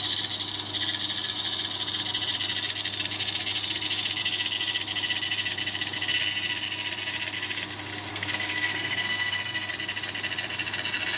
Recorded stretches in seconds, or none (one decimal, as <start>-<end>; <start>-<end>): 0.0-8.1; 9.7-11.2